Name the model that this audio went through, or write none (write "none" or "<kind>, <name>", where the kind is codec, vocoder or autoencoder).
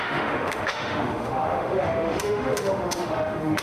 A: autoencoder, DAC-VAE